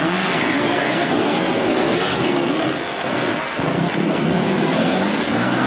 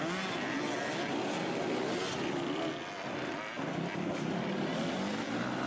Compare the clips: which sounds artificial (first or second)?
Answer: first